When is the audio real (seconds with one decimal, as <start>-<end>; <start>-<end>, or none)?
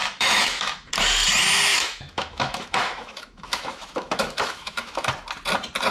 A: 0.9-1.7; 5.1-5.9